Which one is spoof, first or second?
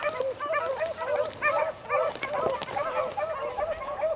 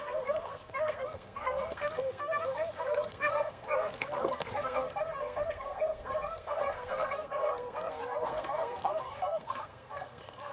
second